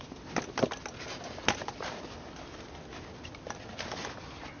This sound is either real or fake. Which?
real